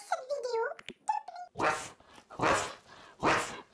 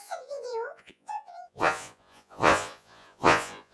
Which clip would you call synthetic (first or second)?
second